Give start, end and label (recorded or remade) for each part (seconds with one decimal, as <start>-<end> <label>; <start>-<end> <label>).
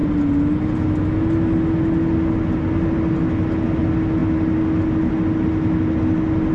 0.0-6.5 recorded